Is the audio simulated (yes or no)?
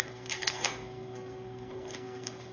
yes